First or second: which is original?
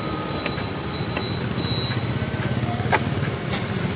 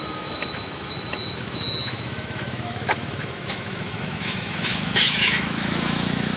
first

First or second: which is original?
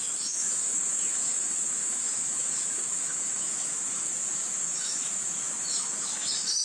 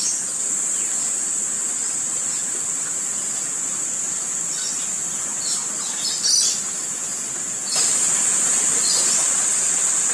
second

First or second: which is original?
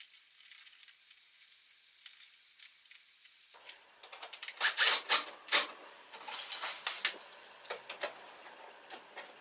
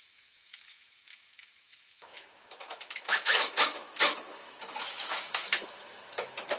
first